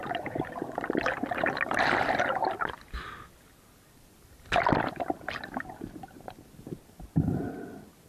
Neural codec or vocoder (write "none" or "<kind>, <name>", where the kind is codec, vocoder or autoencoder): none